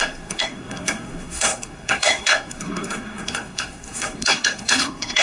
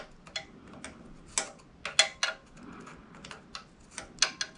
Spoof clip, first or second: first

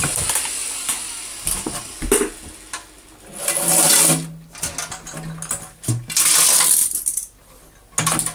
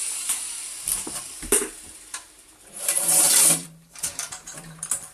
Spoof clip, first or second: second